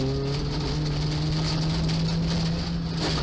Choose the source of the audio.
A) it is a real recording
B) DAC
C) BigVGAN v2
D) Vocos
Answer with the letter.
A